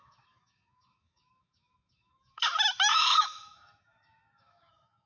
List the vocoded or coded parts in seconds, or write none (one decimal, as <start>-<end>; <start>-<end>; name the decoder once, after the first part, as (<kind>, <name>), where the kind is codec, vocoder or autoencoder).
0.0-5.1 (autoencoder, DAC-VAE)